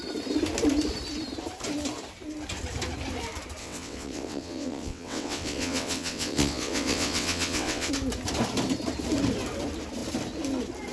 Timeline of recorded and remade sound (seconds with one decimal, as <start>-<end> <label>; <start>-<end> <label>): 0.0-3.6 recorded; 3.6-7.9 remade; 7.9-10.9 recorded